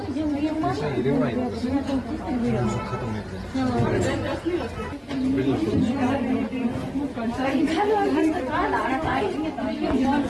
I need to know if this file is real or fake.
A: real